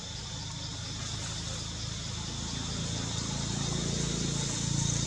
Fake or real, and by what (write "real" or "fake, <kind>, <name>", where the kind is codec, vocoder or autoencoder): real